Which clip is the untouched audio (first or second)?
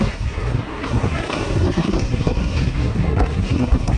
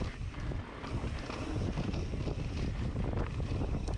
second